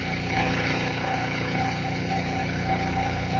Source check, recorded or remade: remade